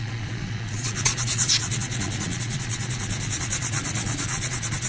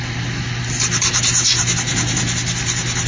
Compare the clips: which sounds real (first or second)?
second